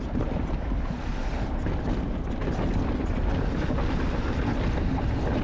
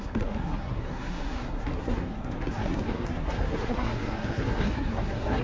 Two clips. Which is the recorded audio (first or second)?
first